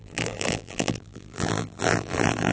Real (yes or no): no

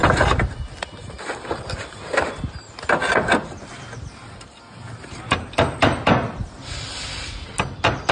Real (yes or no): yes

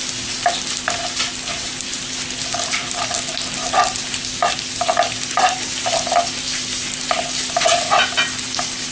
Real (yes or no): yes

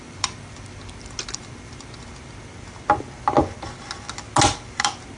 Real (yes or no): yes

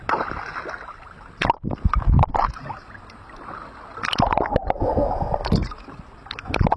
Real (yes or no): yes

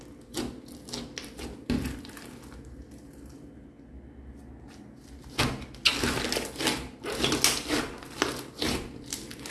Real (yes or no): yes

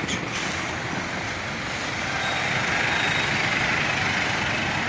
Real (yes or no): yes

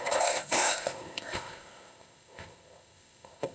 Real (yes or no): no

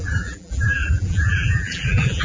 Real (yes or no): no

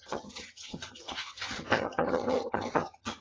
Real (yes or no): no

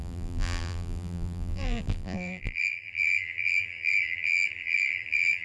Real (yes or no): no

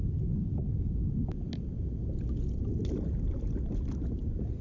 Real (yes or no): yes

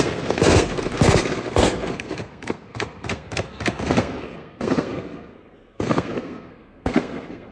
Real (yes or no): no